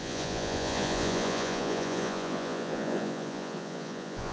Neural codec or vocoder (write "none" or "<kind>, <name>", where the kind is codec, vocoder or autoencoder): vocoder, Vocos